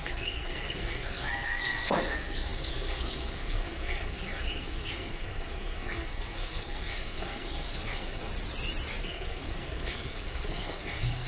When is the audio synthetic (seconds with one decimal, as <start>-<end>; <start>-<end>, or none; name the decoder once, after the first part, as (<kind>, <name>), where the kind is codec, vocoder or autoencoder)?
0.0-8.3 (codec, SNAC); 9.0-11.3